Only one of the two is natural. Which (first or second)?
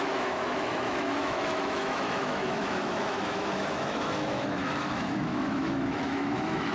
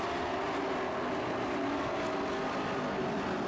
second